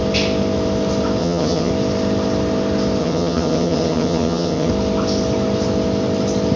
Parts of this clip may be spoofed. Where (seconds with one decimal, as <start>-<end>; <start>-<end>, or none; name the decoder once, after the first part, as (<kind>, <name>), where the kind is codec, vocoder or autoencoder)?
1.2-1.7 (vocoder, HiFi-GAN); 3.0-4.7